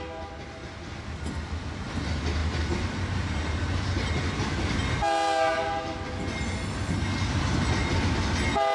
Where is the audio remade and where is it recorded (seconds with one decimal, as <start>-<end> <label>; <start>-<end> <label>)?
0.0-8.7 recorded